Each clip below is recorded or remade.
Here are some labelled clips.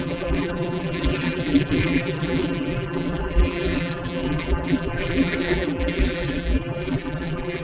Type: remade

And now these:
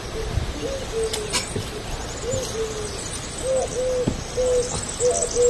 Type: recorded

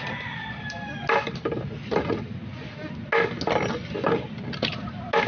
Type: recorded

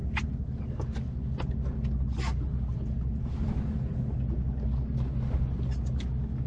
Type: recorded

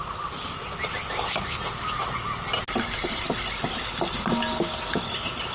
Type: recorded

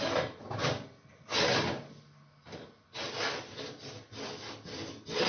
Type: recorded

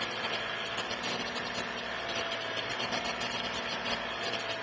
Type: recorded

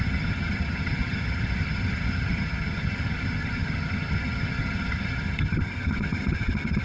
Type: remade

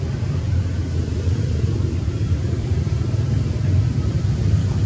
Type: remade